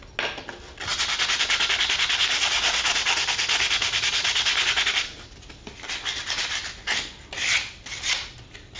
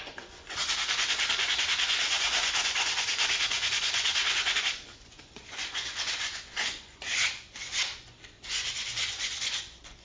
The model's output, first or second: second